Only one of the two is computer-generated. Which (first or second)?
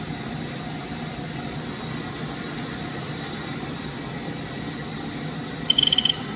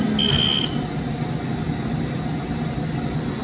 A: first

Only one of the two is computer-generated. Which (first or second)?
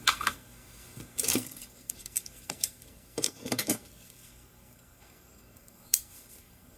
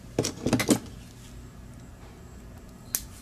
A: first